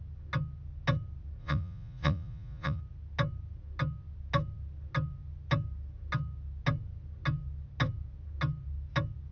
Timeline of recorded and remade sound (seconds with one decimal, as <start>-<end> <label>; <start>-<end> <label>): 0.0-1.4 recorded; 1.4-2.8 remade; 2.8-9.3 recorded

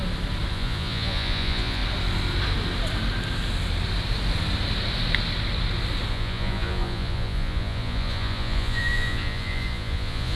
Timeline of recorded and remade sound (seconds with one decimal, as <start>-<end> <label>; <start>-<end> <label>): 0.0-0.5 recorded; 0.5-1.8 remade; 1.8-6.1 recorded; 6.1-10.3 remade

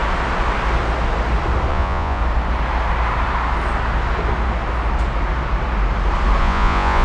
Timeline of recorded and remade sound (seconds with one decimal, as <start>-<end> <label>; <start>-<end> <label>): 0.0-1.7 recorded; 1.7-2.2 remade; 2.2-6.4 recorded; 6.4-7.0 remade

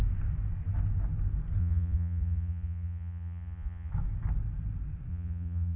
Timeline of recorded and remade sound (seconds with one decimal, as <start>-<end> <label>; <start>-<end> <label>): 0.0-1.6 recorded; 1.6-3.9 remade; 3.9-5.1 recorded; 5.1-5.8 remade